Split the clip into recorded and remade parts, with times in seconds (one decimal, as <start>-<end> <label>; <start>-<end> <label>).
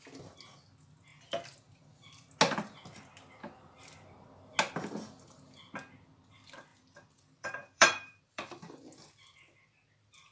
0.0-6.7 recorded; 6.7-8.8 remade; 8.8-10.3 recorded